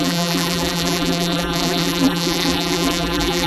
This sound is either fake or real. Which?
fake